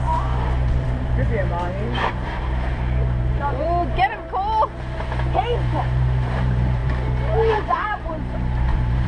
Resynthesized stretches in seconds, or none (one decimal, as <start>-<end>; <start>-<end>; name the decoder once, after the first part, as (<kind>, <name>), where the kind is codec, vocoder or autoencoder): 0.0-6.8 (vocoder, BigVGAN v2); 7.5-9.1

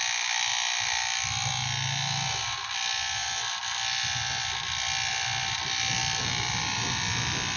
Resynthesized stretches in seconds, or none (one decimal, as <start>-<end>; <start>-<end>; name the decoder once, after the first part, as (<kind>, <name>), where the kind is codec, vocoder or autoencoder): none

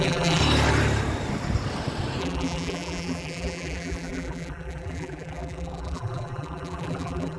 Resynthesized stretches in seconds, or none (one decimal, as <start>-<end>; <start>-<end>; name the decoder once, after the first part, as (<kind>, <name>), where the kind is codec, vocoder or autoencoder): 0.0-0.4 (vocoder, BigVGAN v2); 2.2-7.4

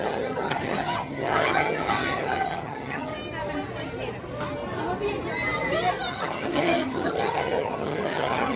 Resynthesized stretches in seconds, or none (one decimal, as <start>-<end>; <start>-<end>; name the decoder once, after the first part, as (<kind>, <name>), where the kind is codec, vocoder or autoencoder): 0.0-3.1 (vocoder, HiFi-GAN); 6.1-8.6

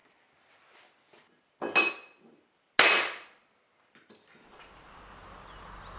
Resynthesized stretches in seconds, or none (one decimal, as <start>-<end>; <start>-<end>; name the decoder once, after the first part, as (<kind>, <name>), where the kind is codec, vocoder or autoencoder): none

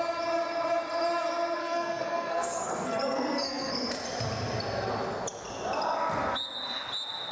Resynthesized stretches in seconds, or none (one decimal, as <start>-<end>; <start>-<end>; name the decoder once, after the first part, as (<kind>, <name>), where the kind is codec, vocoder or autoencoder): 1.6-3.9 (codec, SNAC)

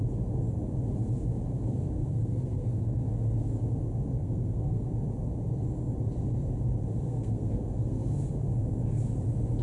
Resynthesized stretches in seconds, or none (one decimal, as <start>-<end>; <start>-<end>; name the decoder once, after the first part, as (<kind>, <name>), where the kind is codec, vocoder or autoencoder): 2.0-3.0 (codec, SNAC); 4.2-4.9; 7.1-8.1